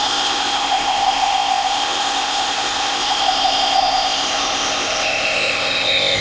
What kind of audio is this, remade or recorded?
remade